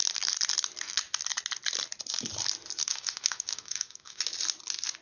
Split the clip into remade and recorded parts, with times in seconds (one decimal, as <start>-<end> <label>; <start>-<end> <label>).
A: 0.0-2.8 recorded; 2.8-4.2 remade; 4.2-5.0 recorded